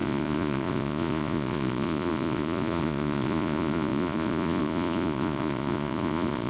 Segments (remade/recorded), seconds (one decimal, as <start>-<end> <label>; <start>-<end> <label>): 0.0-6.5 remade